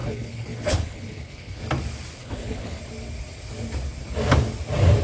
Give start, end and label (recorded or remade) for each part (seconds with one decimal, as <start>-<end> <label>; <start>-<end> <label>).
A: 0.0-1.6 remade; 1.6-2.2 recorded; 2.2-2.8 remade; 2.8-5.0 recorded